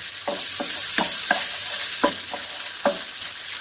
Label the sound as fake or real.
real